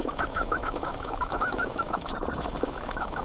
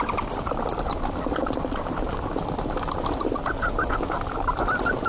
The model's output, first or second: first